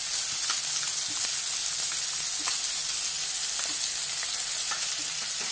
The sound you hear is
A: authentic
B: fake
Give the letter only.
A